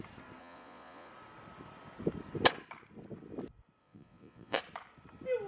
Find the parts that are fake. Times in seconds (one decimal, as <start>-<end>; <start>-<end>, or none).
0.4-1.1; 3.8-4.6